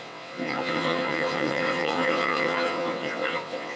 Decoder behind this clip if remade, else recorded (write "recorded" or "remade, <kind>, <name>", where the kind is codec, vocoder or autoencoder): remade, vocoder, WaveNeXt